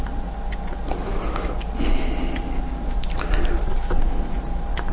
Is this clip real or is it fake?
real